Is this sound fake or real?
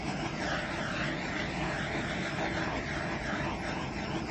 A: fake